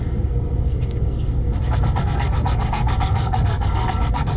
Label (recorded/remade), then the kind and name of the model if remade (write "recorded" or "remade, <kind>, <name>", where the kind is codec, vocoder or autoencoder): remade, codec, SNAC